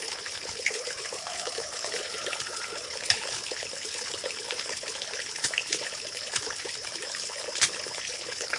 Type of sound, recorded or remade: remade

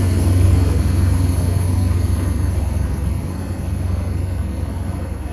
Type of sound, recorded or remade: remade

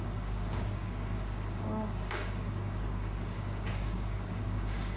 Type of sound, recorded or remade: remade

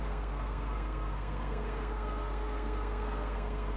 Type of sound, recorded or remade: remade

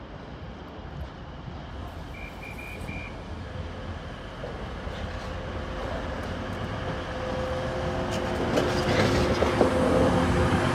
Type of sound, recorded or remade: recorded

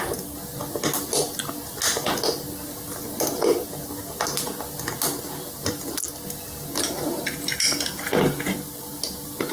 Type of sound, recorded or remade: recorded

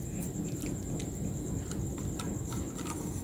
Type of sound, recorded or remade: recorded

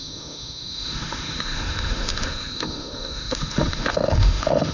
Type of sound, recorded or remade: remade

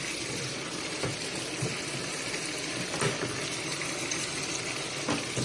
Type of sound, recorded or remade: recorded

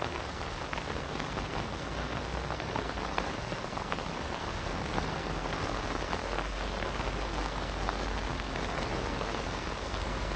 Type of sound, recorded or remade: remade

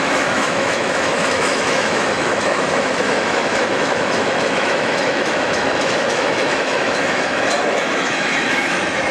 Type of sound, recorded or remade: remade